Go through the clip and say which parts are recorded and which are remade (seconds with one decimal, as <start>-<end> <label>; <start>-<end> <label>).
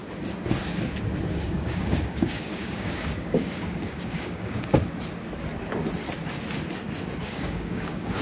0.0-1.3 recorded; 1.3-4.7 remade; 4.7-7.2 recorded; 7.2-8.2 remade